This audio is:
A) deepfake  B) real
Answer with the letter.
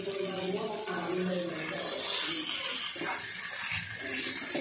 B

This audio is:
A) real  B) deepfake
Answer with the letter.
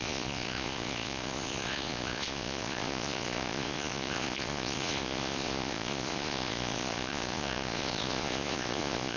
B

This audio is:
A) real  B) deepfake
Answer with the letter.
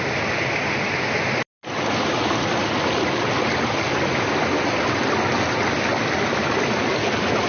A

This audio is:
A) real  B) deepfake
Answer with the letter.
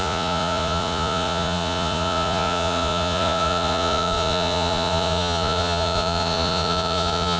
B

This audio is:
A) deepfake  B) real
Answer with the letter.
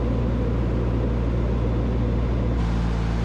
B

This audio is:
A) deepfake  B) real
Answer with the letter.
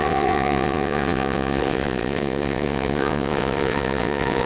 A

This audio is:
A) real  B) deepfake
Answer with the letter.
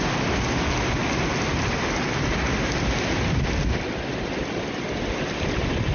A